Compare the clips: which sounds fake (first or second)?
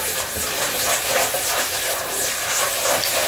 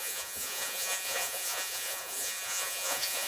second